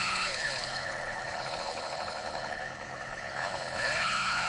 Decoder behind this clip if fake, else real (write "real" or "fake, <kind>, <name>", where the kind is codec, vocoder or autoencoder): fake, codec, HILCodec